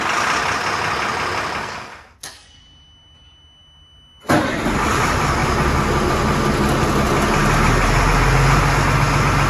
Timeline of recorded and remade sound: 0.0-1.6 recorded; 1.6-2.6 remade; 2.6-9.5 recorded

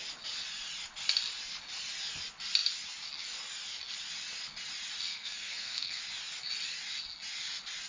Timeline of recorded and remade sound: 0.0-5.1 recorded; 5.1-6.0 remade; 6.0-7.9 recorded

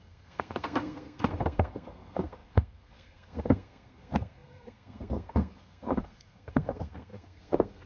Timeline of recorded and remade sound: 0.0-7.9 remade

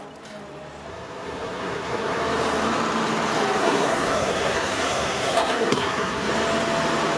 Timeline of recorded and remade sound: 0.0-0.9 recorded; 0.9-2.2 remade; 2.2-3.6 recorded; 3.6-6.3 remade; 6.3-7.2 recorded

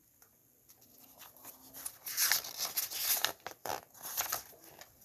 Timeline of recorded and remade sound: 0.0-5.0 recorded

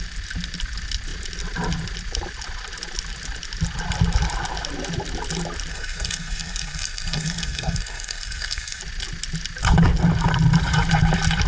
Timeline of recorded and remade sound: 0.0-5.7 recorded; 5.7-8.8 remade; 8.8-11.5 recorded